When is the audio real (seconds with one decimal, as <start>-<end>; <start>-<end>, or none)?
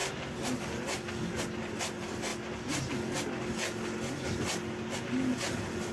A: 0.0-5.9